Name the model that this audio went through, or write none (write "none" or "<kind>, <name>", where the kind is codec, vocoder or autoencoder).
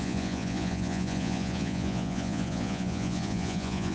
vocoder, Vocos